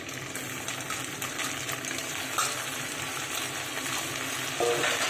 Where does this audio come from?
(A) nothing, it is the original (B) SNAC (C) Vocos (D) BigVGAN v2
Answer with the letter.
A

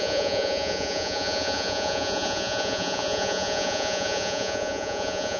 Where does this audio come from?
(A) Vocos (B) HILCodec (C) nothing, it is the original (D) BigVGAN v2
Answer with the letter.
A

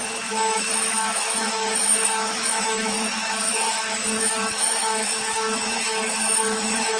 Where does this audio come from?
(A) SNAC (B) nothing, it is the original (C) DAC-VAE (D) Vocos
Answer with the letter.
C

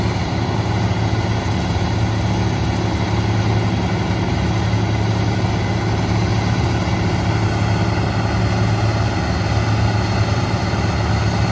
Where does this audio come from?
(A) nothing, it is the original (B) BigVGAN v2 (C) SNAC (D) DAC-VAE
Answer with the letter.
A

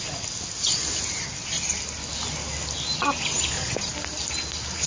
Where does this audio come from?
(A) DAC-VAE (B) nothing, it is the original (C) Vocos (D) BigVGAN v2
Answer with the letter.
B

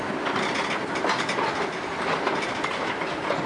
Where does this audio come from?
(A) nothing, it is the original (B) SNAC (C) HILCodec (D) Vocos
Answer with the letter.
A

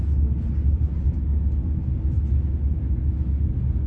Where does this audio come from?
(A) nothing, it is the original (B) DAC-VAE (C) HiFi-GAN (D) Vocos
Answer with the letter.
A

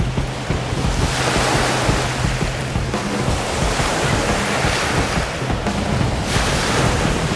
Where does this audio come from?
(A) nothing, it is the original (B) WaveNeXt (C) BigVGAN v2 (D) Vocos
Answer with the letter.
A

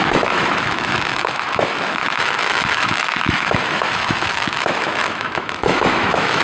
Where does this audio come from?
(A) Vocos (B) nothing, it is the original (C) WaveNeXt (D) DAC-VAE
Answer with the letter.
D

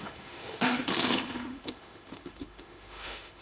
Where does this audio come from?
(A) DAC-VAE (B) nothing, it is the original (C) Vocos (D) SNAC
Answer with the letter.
A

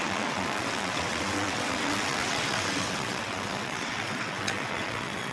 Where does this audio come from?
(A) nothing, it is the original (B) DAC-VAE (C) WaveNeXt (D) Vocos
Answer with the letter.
C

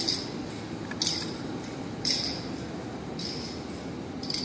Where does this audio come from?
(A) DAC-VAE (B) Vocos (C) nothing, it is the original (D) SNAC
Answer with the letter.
C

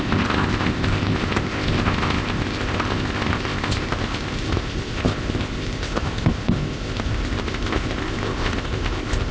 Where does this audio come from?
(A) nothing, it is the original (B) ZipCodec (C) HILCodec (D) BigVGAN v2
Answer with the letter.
B